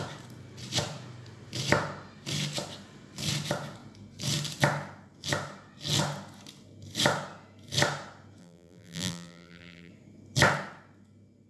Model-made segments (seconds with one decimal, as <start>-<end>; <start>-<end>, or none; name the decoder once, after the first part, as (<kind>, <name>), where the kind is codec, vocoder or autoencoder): 8.4-9.9 (vocoder, BigVGAN v2)